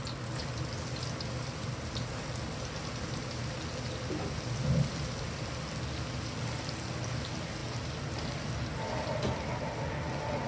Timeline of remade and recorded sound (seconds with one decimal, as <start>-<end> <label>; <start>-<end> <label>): 0.0-10.5 recorded